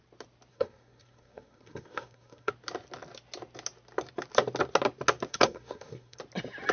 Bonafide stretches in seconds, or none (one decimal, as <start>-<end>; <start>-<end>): 0.0-0.5; 2.5-5.3; 6.2-6.7